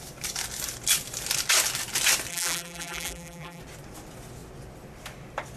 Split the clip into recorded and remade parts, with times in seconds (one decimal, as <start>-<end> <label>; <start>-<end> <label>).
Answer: 0.0-2.3 recorded; 2.3-3.6 remade; 3.6-5.6 recorded